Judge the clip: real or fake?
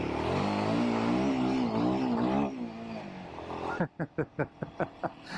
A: real